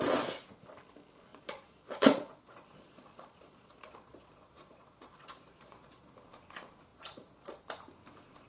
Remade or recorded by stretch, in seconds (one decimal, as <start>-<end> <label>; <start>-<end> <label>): 0.0-1.3 recorded; 1.3-6.1 remade; 6.1-6.9 recorded; 6.9-7.6 remade; 7.6-8.5 recorded

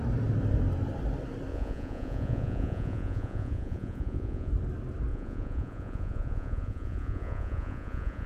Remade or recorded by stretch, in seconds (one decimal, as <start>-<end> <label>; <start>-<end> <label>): 0.0-1.5 recorded; 1.5-4.5 remade; 4.5-5.1 recorded; 5.1-8.3 remade

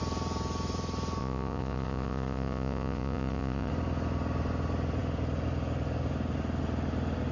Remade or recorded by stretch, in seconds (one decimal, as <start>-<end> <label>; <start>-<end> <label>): 0.0-1.2 recorded; 1.2-3.7 remade; 3.7-7.3 recorded

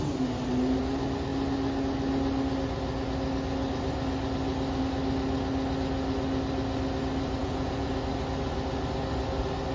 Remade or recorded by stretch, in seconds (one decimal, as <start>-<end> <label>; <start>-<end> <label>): 0.0-7.4 recorded; 7.4-7.9 remade; 7.9-9.7 recorded

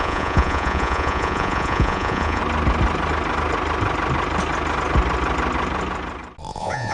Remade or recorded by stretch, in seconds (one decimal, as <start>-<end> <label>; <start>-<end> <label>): 0.0-2.4 remade; 2.4-6.5 recorded; 6.5-6.9 remade

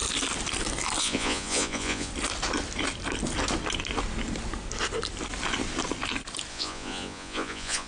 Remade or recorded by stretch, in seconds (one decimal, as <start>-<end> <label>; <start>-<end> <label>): 0.0-1.0 recorded; 1.0-2.1 remade; 2.1-6.5 recorded; 6.5-7.9 remade

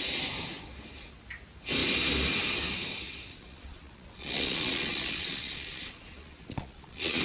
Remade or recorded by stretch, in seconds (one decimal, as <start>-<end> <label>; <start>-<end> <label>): 0.0-3.3 recorded; 3.3-7.2 remade